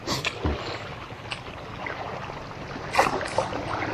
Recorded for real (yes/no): yes